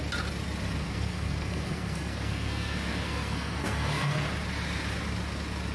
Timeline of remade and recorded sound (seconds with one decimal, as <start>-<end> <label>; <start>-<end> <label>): 0.0-0.8 recorded; 0.8-4.2 remade; 4.2-5.7 recorded